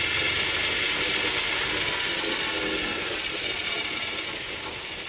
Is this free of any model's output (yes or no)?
yes